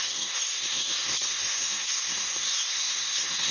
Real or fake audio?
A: fake